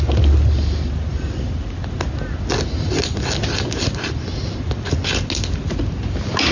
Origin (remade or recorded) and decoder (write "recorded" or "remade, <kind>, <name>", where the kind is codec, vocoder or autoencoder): recorded